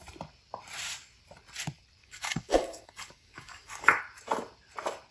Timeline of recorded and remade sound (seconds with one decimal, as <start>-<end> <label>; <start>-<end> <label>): 0.0-2.0 recorded; 2.0-4.0 remade; 4.0-5.1 recorded